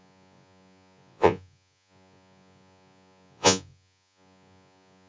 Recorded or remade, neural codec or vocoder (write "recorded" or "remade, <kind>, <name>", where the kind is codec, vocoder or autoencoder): remade, vocoder, Vocos